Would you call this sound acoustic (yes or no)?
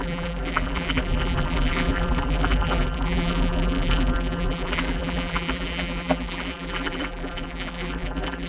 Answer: no